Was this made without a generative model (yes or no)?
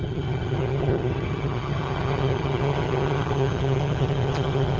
no